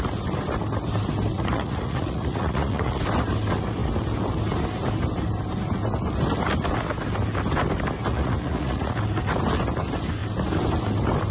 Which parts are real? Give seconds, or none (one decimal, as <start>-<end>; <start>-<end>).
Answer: 0.0-1.3; 3.0-8.1; 9.0-11.3